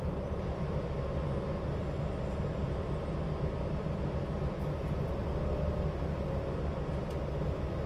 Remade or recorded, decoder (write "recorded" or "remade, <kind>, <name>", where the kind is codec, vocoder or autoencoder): recorded